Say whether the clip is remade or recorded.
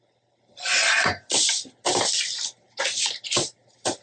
recorded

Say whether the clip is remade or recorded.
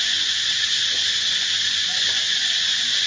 remade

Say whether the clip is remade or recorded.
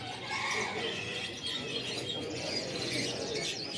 remade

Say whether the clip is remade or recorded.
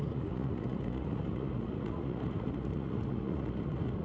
remade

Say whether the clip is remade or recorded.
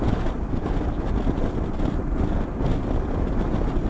recorded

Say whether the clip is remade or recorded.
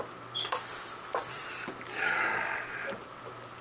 recorded